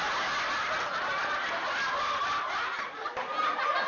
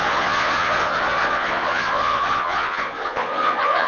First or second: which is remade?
second